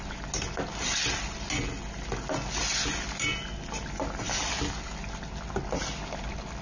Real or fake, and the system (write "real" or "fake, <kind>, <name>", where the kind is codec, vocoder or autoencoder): real